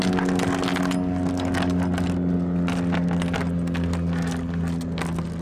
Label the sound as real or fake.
real